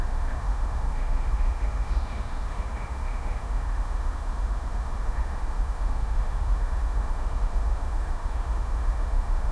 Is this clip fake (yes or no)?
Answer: yes